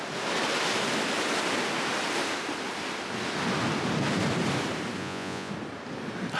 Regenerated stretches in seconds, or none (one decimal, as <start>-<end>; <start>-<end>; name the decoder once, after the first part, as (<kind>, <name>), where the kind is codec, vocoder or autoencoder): 5.0-5.5 (vocoder, Vocos)

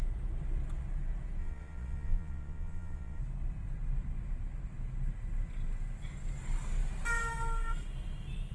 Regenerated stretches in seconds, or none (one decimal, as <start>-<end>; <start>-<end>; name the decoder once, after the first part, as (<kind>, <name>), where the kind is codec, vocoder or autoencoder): 1.4-3.2 (vocoder, Vocos)

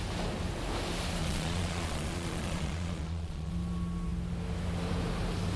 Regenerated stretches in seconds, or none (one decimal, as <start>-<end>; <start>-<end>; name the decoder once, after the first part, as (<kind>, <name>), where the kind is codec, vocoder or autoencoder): 1.2-3.5 (vocoder, Vocos)

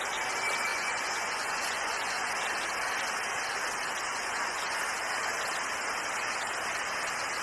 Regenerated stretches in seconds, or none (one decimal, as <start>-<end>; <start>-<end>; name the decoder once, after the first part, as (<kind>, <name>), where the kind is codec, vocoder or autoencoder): 0.7-2.3 (vocoder, Vocos); 4.1-4.8

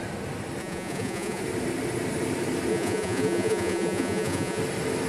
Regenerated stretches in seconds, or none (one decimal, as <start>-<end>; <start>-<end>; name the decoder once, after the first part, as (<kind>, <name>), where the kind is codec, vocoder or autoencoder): 0.6-1.4 (vocoder, Vocos); 2.7-4.6

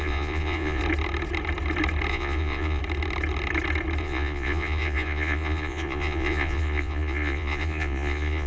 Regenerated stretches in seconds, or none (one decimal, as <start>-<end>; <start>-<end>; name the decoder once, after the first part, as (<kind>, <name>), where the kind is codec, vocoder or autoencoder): 0.0-0.8 (vocoder, Vocos); 2.1-2.8; 4.0-8.5

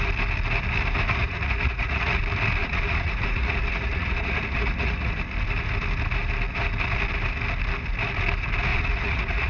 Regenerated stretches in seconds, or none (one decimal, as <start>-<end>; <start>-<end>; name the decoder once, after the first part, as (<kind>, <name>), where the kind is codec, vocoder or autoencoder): 1.2-2.2 (vocoder, Vocos); 2.6-5.1; 8.7-9.5